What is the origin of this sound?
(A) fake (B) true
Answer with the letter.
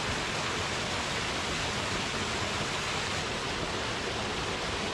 B